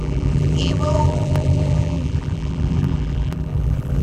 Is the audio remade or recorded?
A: remade